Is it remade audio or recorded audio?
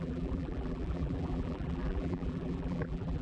remade